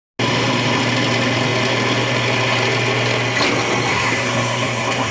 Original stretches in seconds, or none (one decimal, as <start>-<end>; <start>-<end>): 0.0-3.9